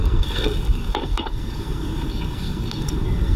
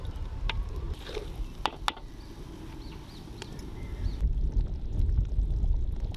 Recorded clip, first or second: second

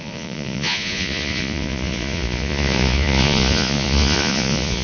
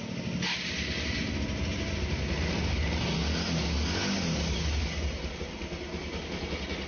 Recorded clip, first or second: second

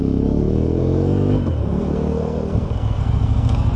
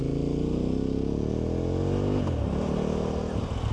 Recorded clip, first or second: second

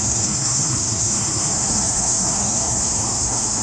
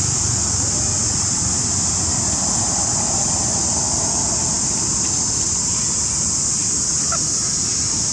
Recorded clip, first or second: second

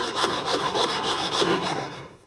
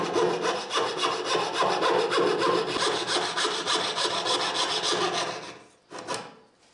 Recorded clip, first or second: second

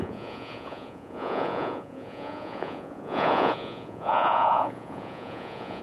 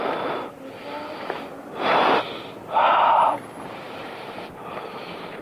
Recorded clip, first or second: second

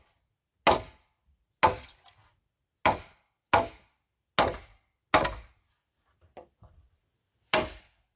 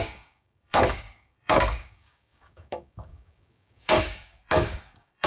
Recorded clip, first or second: first